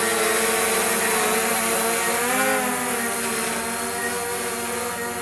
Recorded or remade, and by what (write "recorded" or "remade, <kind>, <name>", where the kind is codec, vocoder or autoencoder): recorded